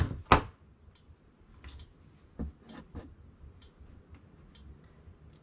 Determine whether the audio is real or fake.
real